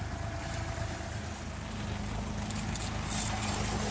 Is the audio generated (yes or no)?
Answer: no